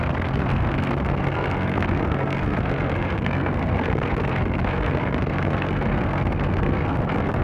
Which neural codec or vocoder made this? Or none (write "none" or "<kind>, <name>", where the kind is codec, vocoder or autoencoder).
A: codec, SNAC